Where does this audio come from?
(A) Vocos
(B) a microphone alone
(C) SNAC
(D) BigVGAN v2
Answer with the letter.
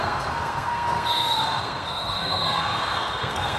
C